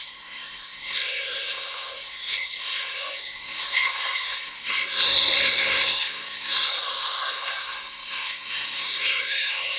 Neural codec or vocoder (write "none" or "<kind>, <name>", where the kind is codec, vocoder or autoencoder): codec, SNAC